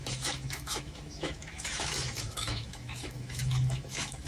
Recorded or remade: remade